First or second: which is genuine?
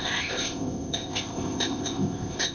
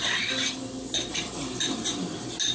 second